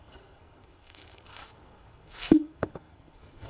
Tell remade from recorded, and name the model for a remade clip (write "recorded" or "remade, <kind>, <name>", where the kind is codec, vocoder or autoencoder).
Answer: remade, codec, SNAC